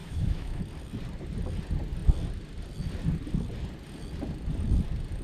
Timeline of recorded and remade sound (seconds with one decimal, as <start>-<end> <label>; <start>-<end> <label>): 0.0-0.6 remade; 0.6-5.2 recorded